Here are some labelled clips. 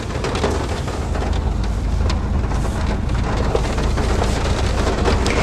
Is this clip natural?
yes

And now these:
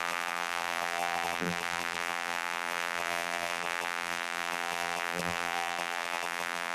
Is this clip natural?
no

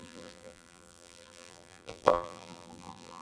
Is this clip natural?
no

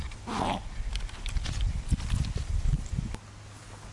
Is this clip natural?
yes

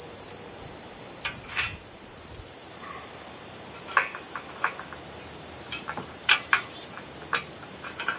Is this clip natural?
no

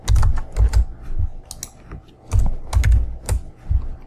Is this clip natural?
yes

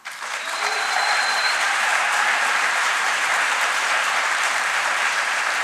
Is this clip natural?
no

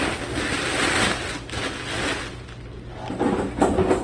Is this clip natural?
yes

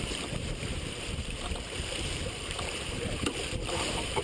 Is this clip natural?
no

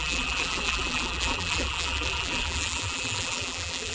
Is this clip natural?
no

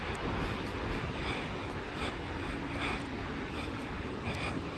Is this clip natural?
yes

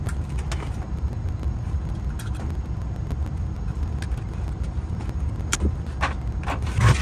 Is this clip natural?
yes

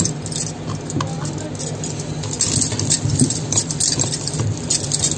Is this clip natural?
yes